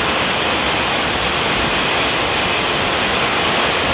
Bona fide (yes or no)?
yes